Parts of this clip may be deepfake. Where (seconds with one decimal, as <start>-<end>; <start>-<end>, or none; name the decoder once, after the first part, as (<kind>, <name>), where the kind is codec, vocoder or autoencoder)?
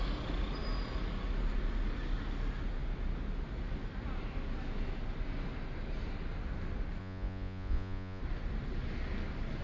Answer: 7.0-8.2 (vocoder, Vocos)